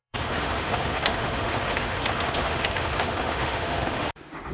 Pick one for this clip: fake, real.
fake